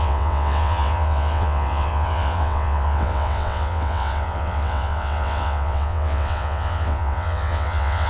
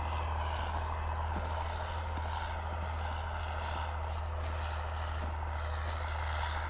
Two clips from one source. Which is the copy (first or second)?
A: first